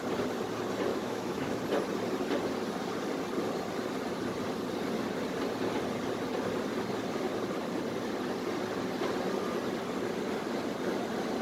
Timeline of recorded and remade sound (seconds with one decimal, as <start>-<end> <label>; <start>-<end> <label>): 0.0-0.9 recorded; 0.9-1.6 remade; 1.6-11.4 recorded